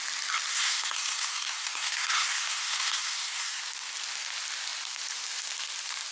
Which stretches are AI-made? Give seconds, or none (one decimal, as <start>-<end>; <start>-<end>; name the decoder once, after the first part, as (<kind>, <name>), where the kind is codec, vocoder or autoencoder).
0.5-3.6 (codec, SNAC)

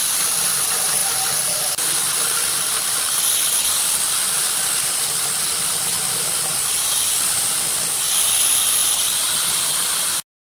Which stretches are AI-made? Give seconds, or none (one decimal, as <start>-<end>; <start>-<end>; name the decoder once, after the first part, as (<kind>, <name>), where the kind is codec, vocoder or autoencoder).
0.0-1.0 (vocoder, BigVGAN v2); 5.6-6.5; 7.2-8.8

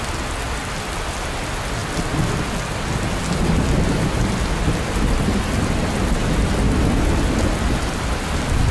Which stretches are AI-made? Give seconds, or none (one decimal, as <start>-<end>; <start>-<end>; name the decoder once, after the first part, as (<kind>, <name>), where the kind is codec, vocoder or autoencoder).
none

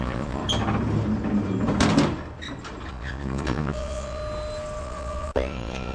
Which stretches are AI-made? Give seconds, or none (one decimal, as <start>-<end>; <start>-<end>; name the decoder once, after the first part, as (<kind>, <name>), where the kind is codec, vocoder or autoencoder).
0.0-0.4 (vocoder, Vocos); 2.9-4.2; 4.8-5.9

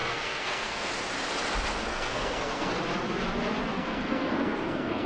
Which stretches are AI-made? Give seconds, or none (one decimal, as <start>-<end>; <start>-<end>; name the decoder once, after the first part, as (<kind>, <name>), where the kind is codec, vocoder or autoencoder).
0.0-0.9 (codec, SNAC); 1.9-2.7; 3.7-5.1